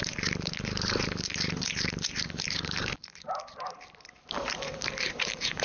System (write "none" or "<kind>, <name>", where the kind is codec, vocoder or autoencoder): vocoder, BigVGAN v2